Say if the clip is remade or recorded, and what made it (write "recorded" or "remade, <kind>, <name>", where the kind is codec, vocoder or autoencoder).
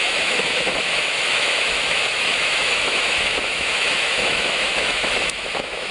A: remade, autoencoder, DAC-VAE